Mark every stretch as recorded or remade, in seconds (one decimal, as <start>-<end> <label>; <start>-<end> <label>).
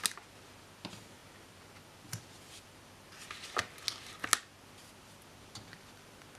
0.0-6.4 recorded